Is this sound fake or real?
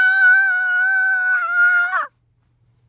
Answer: real